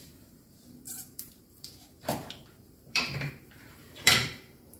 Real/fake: fake